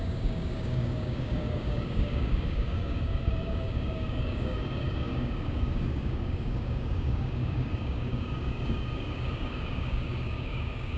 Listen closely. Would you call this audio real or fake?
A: fake